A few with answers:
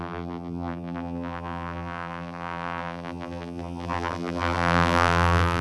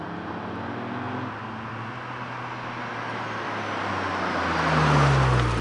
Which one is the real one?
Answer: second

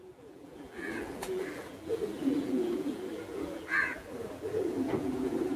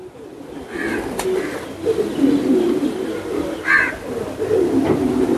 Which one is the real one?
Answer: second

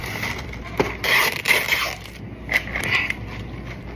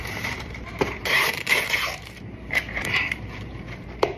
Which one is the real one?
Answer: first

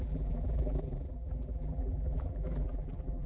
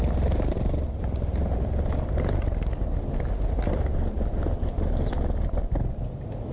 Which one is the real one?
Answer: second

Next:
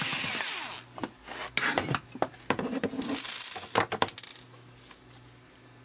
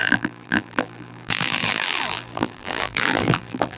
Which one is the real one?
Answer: first